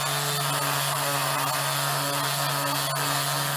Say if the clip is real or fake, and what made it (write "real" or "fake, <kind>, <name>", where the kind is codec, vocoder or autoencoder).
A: real